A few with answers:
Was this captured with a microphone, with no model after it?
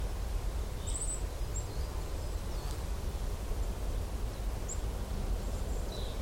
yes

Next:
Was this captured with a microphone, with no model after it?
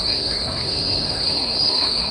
no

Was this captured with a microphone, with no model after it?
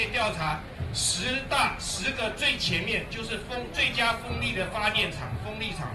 yes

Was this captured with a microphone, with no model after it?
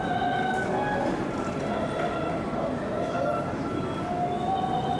yes